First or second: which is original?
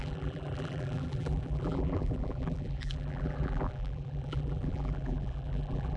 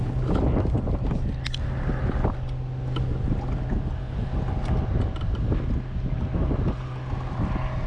second